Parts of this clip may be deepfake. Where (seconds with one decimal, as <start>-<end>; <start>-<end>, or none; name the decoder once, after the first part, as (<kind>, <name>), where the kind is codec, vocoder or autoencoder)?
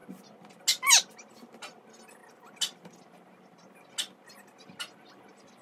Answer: none